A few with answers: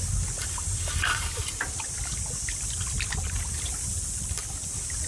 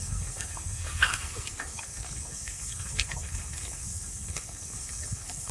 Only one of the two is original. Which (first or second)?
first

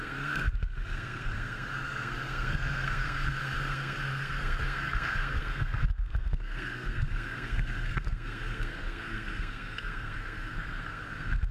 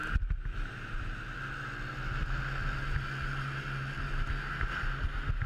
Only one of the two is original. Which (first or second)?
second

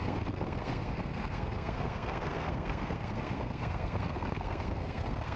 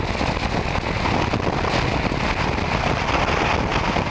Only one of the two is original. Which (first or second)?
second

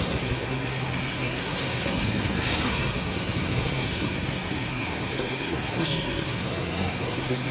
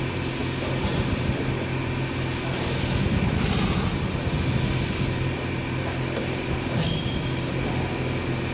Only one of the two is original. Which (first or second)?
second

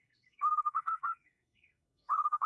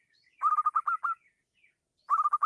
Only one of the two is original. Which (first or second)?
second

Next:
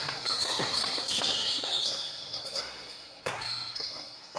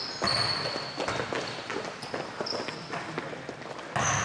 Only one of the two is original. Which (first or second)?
second